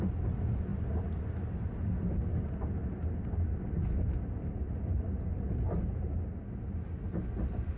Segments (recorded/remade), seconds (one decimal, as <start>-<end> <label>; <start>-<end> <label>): 0.0-7.8 recorded